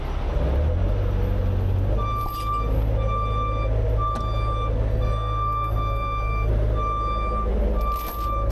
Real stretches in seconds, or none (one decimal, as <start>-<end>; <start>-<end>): 0.0-4.9; 6.5-8.5